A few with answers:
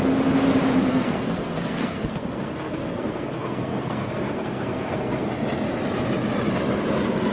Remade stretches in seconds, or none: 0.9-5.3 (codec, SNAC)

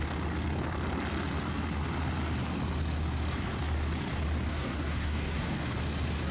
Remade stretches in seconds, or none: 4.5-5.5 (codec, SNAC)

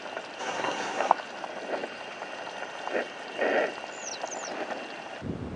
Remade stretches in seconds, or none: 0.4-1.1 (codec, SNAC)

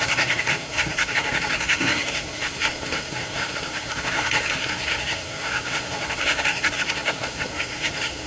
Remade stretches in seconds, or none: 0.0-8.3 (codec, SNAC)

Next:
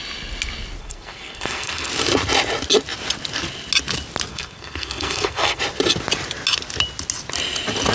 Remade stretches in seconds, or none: 0.8-1.9 (codec, SNAC); 4.3-5.6

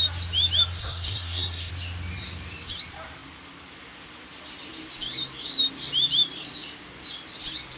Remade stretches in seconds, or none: 0.8-1.7 (codec, SNAC)